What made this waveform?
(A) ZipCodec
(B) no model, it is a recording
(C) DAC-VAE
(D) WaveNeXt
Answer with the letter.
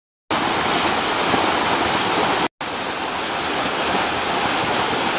B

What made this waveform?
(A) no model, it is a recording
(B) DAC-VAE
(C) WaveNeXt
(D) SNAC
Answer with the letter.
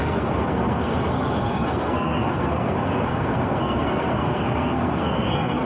D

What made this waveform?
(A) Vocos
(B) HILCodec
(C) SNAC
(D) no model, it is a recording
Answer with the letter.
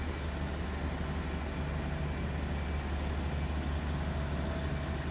D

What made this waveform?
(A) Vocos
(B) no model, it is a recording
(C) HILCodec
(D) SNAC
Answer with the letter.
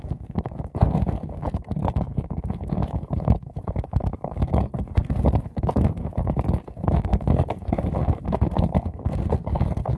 D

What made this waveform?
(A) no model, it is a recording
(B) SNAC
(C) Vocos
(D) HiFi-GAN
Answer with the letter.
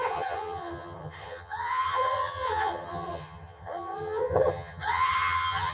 D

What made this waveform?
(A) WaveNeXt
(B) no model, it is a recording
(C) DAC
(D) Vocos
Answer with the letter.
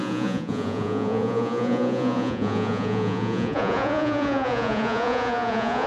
D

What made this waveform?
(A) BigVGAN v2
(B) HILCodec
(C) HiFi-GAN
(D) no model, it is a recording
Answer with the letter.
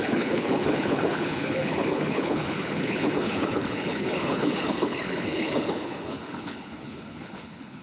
B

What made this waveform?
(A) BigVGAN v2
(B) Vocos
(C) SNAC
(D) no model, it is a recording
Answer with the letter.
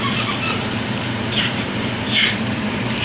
A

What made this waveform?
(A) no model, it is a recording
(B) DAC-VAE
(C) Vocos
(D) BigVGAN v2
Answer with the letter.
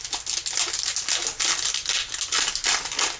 A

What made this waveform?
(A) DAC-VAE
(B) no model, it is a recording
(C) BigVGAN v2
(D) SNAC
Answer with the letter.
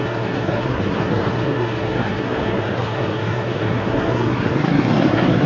D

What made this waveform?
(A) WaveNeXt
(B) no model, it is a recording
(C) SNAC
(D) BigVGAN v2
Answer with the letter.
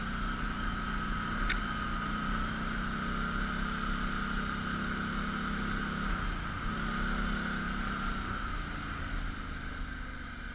B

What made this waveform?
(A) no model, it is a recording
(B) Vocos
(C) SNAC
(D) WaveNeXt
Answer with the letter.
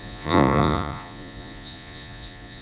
B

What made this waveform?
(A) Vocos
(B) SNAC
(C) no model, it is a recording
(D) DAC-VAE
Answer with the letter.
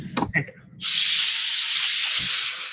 C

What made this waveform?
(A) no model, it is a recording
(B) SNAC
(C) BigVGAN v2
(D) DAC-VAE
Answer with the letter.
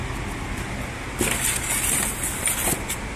A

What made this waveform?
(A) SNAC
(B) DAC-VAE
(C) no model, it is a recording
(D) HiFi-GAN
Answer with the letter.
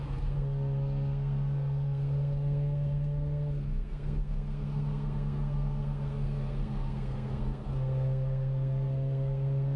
A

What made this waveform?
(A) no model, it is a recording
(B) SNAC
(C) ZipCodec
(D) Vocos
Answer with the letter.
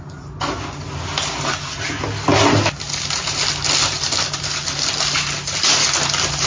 A